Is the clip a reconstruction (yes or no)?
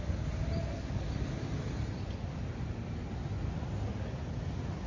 no